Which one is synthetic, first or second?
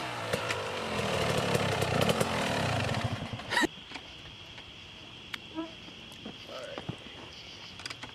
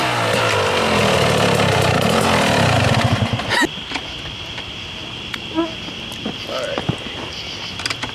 first